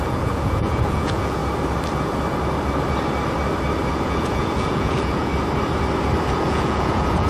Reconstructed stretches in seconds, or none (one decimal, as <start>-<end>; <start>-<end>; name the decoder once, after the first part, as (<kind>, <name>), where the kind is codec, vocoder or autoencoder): 0.0-1.4 (vocoder, Vocos); 3.9-5.3; 6.3-7.3